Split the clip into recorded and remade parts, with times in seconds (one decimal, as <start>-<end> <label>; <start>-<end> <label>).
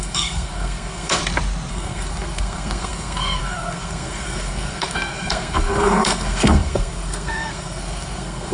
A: 0.0-1.2 remade; 1.2-1.7 recorded; 1.7-8.5 remade